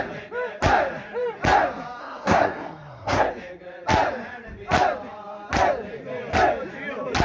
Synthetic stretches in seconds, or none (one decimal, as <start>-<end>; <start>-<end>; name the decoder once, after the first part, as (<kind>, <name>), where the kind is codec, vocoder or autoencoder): 2.0-3.3 (codec, SNAC)